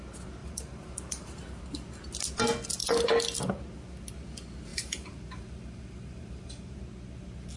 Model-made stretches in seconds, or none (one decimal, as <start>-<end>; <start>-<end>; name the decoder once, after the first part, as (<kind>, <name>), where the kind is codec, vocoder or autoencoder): 0.4-1.4 (vocoder, BigVGAN v2); 4.7-6.8